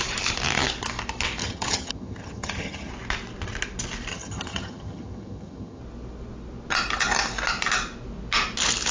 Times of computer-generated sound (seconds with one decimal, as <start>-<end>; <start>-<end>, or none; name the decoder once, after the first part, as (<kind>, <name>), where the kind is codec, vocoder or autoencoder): 1.4-2.9 (vocoder, HiFi-GAN); 4.1-5.8